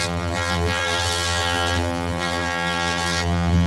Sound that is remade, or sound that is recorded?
remade